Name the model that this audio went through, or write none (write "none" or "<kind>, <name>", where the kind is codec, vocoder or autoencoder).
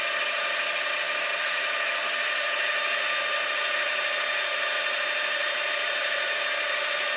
none